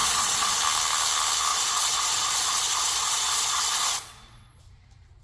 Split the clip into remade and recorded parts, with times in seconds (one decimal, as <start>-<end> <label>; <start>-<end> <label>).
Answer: 0.0-0.6 remade; 0.6-1.5 recorded; 1.5-4.6 remade; 4.6-5.2 recorded